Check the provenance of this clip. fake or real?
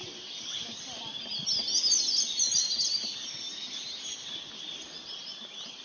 real